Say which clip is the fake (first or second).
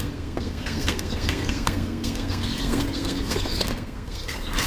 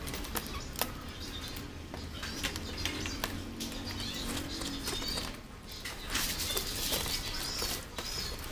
first